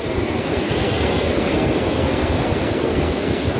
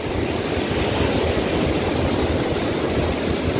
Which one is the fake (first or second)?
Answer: first